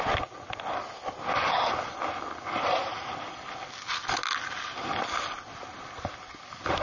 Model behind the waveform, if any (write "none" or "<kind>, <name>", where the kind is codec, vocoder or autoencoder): none